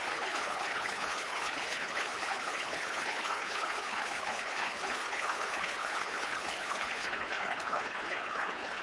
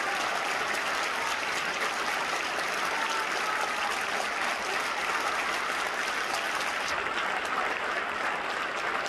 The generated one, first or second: first